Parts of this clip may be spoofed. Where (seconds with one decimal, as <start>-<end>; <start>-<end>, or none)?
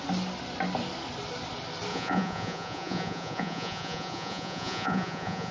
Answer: 1.9-5.5